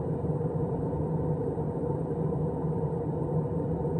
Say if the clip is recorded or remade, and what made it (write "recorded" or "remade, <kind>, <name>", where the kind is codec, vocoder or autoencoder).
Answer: recorded